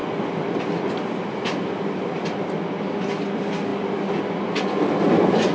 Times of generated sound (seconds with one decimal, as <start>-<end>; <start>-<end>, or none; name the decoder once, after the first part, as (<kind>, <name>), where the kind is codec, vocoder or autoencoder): none